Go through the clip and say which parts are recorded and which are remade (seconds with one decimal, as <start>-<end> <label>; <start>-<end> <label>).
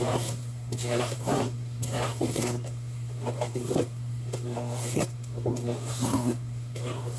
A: 0.0-7.2 remade